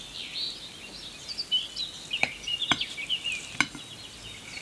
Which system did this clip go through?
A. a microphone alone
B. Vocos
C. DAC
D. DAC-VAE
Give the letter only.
A